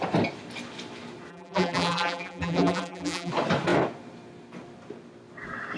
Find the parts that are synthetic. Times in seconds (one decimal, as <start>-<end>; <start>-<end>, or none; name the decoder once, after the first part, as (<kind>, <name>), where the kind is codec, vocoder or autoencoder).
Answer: 1.3-3.3 (vocoder, BigVGAN v2)